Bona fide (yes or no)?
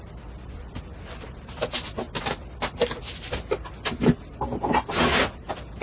yes